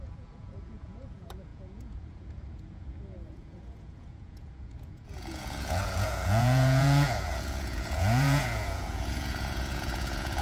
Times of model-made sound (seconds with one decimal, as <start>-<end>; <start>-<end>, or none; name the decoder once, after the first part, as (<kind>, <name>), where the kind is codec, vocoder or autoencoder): 0.0-10.4 (vocoder, Vocos)